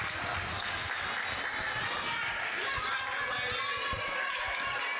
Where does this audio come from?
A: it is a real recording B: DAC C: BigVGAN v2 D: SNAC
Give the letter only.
A